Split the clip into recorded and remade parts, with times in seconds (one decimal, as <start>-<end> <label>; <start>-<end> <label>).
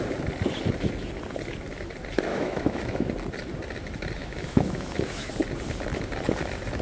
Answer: 0.0-2.3 recorded; 2.3-3.1 remade; 3.1-4.2 recorded; 4.2-5.3 remade; 5.3-6.8 recorded